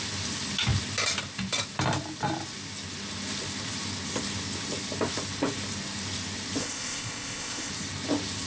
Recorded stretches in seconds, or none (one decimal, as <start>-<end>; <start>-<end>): 0.0-6.6; 7.7-8.5